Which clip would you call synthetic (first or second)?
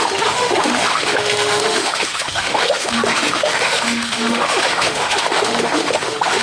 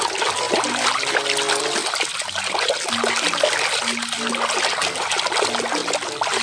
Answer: first